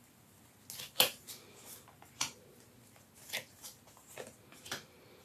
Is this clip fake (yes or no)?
no